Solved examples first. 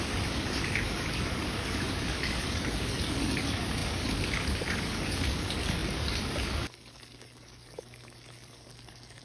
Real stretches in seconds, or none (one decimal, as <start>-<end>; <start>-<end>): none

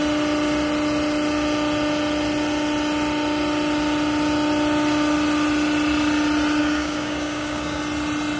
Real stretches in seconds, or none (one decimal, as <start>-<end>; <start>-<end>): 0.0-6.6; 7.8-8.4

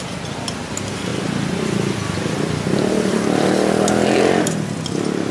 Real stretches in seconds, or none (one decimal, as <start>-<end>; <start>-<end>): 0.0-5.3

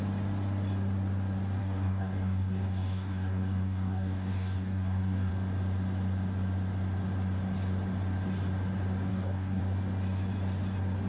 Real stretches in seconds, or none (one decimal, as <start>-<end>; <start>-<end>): 0.0-1.6; 5.3-9.1; 9.6-11.1

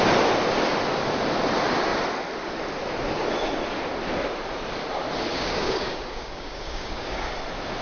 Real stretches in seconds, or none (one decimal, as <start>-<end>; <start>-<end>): 0.0-5.3; 7.3-7.8

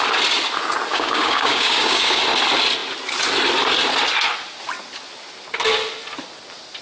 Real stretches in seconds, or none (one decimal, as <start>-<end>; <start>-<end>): 0.0-0.9; 2.2-6.8